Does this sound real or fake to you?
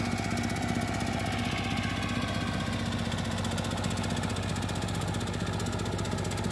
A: real